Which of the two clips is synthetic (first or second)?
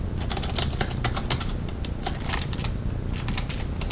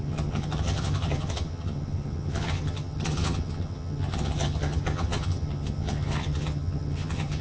second